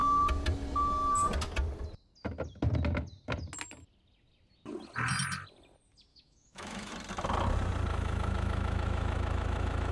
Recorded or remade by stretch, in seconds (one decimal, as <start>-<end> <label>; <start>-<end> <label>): 0.0-6.1 recorded; 6.1-6.9 remade; 6.9-7.9 recorded; 7.9-9.9 remade